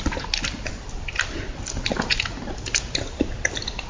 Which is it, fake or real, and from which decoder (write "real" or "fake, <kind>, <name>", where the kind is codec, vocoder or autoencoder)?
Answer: real